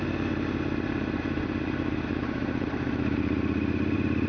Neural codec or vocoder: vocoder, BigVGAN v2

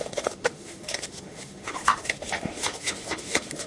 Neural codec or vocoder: autoencoder, DAC-VAE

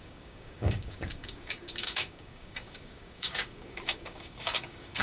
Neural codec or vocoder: codec, DAC